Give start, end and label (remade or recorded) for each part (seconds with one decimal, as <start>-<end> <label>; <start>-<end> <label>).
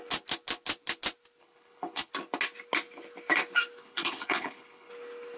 0.0-1.4 recorded; 1.4-2.1 remade; 2.1-3.8 recorded; 3.8-4.9 remade; 4.9-5.4 recorded